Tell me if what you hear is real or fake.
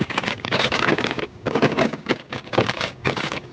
fake